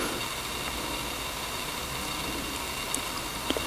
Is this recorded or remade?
recorded